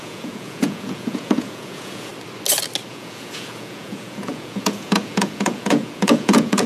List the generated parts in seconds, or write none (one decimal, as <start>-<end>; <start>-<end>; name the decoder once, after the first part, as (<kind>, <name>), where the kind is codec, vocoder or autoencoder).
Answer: 0.0-2.1 (vocoder, Vocos); 2.9-6.7